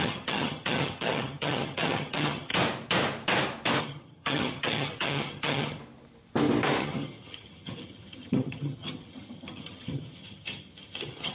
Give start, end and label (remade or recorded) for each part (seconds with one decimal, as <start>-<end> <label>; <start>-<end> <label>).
0.0-2.5 remade; 2.5-3.8 recorded; 3.8-5.8 remade; 5.8-6.8 recorded; 6.8-11.3 remade